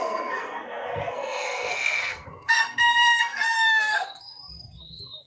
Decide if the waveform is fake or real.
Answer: fake